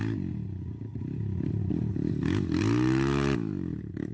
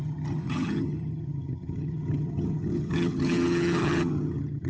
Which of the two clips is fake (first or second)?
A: second